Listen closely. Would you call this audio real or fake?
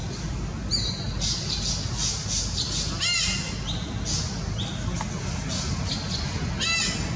real